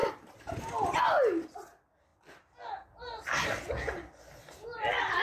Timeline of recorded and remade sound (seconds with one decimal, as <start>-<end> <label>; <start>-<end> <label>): 0.0-5.2 recorded